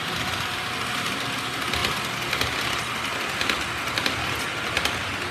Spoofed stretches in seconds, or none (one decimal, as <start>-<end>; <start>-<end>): none